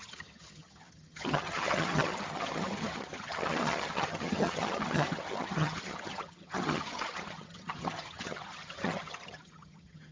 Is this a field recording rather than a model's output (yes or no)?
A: no